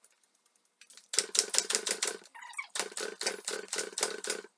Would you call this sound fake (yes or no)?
no